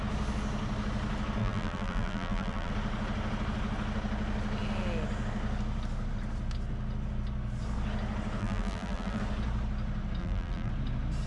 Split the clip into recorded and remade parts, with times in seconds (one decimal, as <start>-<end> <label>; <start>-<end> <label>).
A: 0.0-1.4 recorded; 1.4-2.7 remade; 2.7-8.4 recorded; 8.4-9.2 remade; 9.2-10.2 recorded; 10.2-10.7 remade; 10.7-11.3 recorded